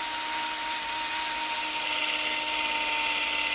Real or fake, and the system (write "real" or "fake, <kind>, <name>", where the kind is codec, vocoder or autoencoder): real